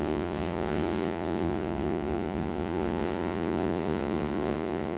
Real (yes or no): no